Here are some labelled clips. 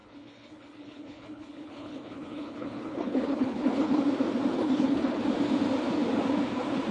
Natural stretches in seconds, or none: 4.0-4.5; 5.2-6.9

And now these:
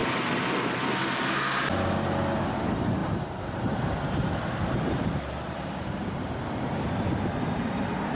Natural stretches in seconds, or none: 0.0-2.5

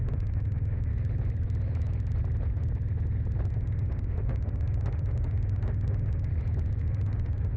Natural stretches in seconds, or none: 0.9-3.5; 6.3-6.8

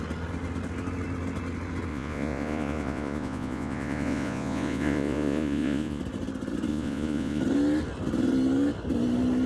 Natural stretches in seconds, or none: 0.0-1.9; 6.0-6.7; 7.4-9.5

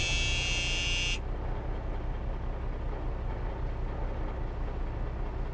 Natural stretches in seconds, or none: 0.0-5.5

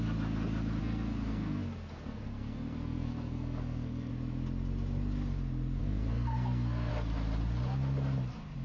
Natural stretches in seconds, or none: 0.0-0.8; 4.1-5.8; 6.9-8.6

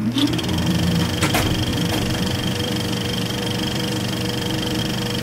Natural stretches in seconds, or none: 1.0-1.7; 4.8-5.2